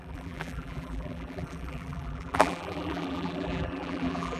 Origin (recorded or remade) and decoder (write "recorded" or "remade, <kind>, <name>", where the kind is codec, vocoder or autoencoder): remade, vocoder, BigVGAN v2